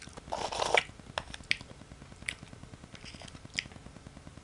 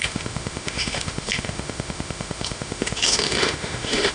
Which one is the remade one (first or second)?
second